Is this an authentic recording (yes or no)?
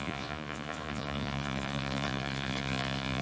no